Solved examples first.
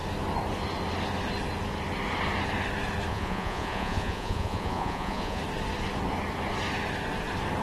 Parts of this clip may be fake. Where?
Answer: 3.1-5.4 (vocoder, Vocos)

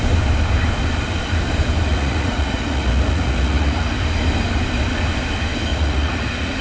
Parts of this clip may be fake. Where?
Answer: 1.9-3.9 (vocoder, Vocos); 5.7-6.6

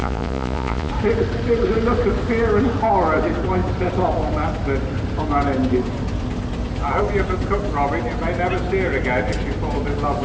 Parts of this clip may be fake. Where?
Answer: 0.0-0.9 (vocoder, Vocos)